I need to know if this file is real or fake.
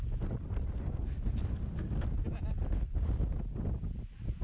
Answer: real